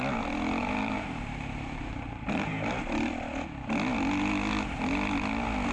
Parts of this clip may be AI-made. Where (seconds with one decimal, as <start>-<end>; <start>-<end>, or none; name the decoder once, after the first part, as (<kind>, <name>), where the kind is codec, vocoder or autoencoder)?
0.6-2.7 (vocoder, BigVGAN v2)